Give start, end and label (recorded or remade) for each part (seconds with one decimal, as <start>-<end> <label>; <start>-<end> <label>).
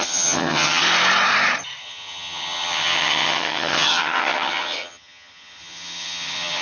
0.0-0.8 remade; 0.8-1.8 recorded; 1.8-6.6 remade